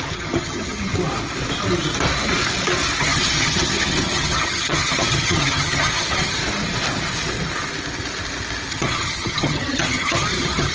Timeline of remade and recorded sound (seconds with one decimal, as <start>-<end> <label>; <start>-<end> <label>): 0.0-0.9 remade; 0.9-3.0 recorded; 3.0-6.4 remade; 6.4-8.7 recorded; 8.7-10.7 remade